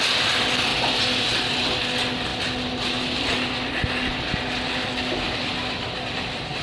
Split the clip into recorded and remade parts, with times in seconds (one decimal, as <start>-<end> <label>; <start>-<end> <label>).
0.0-0.7 recorded; 0.7-1.8 remade; 1.8-2.3 recorded; 2.3-3.0 remade; 3.0-6.6 recorded